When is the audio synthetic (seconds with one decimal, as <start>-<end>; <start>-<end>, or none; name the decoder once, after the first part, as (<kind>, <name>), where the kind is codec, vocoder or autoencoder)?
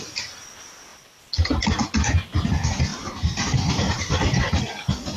2.9-4.5 (vocoder, BigVGAN v2)